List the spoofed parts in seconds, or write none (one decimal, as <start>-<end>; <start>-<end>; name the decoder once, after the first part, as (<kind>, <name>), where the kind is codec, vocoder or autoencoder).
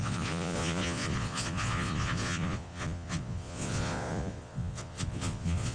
0.0-5.7 (vocoder, Vocos)